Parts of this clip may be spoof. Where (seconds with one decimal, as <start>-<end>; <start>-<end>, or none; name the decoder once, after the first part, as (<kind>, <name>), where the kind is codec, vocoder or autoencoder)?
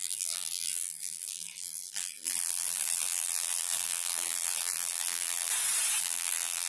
0.0-5.5 (vocoder, BigVGAN v2); 6.0-6.7